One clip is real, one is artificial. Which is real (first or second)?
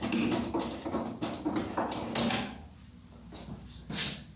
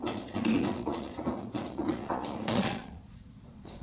first